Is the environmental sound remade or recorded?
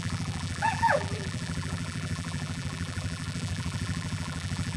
remade